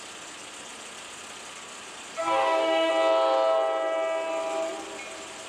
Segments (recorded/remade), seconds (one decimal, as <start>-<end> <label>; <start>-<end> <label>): 0.0-2.2 recorded; 2.2-2.9 remade; 2.9-5.5 recorded